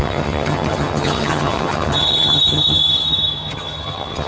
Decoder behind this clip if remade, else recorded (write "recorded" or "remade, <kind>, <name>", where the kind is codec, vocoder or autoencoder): remade, vocoder, HiFi-GAN